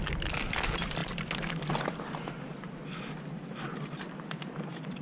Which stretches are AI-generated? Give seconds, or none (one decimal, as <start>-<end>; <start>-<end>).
none